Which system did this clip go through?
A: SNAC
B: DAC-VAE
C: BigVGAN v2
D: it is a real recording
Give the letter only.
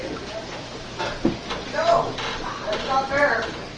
D